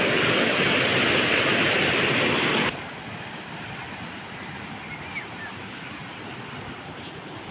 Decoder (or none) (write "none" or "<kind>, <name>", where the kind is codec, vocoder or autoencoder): none